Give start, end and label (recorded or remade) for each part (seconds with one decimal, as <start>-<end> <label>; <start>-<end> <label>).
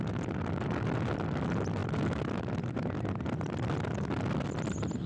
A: 0.0-5.1 recorded